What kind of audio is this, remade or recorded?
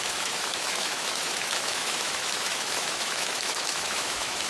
remade